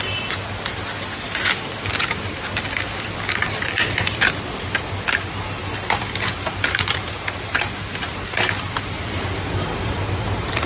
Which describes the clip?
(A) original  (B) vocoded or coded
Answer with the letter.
A